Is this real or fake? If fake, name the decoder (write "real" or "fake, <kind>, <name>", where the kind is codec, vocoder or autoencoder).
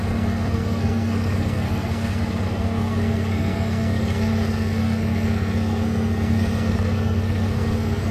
fake, codec, SNAC